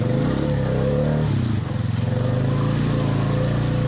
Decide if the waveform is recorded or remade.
recorded